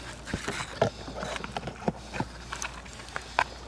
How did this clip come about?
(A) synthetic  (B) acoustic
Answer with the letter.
B